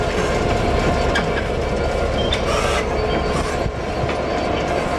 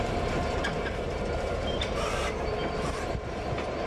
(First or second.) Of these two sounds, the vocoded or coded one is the second